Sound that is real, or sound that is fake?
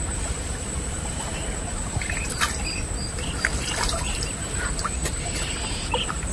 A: fake